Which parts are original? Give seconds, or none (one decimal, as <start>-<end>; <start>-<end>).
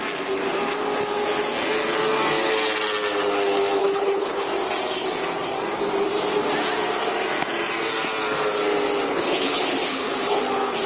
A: 0.0-3.8; 4.5-9.1; 10.4-10.9